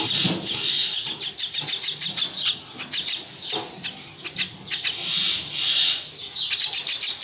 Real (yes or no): yes